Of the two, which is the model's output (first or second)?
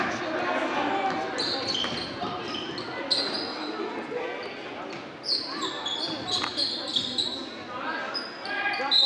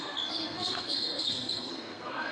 second